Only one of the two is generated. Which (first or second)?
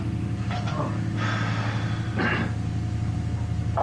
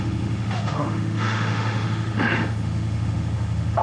second